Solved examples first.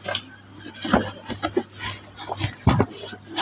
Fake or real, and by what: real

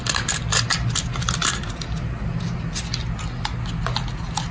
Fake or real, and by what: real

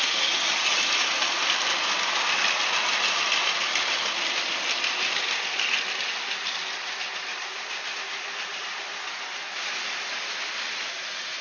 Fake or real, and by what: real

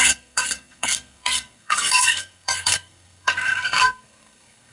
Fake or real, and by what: fake, codec, SNAC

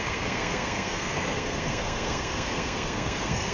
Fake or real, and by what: fake, codec, SNAC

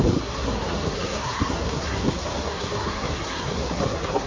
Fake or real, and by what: fake, codec, SNAC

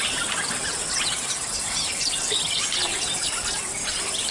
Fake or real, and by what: real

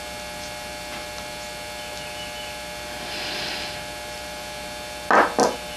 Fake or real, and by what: real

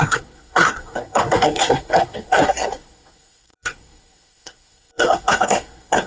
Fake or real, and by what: fake, codec, SNAC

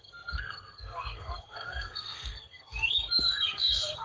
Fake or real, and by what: fake, codec, SNAC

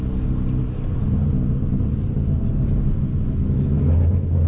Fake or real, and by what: real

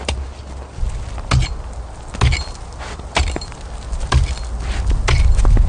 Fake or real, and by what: real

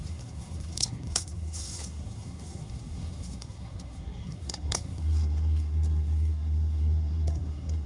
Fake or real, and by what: fake, codec, SNAC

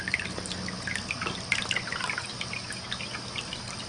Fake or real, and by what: real